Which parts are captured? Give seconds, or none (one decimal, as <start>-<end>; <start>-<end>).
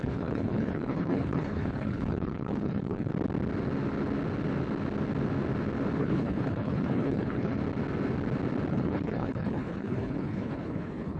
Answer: 3.1-6.0; 7.6-8.7